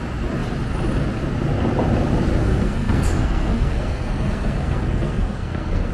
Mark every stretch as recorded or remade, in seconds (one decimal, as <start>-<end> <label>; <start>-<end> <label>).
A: 0.0-2.4 recorded; 2.4-5.9 remade